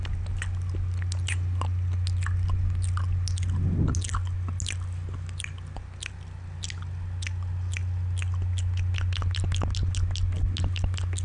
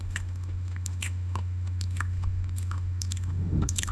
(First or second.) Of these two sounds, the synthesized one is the second